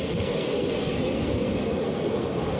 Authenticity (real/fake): fake